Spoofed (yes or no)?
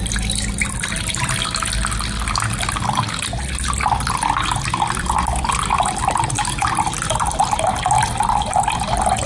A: no